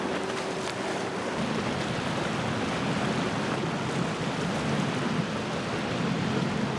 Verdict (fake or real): real